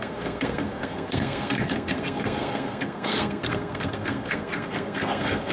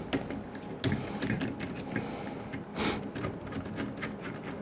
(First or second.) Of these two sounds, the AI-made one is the first